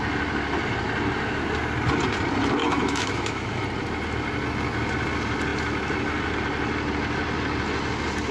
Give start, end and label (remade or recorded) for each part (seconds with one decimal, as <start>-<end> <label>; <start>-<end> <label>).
0.0-2.6 recorded; 2.6-3.5 remade; 3.5-8.3 recorded